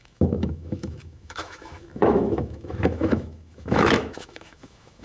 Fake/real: fake